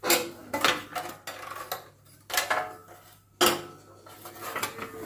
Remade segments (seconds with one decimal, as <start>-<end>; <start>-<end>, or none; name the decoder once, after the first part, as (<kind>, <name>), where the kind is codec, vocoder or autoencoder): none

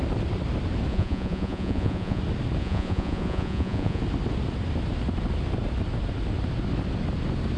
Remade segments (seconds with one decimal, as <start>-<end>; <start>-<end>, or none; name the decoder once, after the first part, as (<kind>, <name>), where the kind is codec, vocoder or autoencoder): 0.9-2.2 (vocoder, Vocos); 2.6-4.0

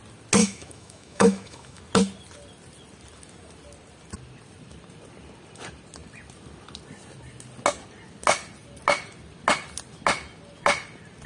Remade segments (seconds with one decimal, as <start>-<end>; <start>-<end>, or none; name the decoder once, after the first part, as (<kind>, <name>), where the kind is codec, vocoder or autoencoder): 0.4-1.8 (autoencoder, DAC-VAE)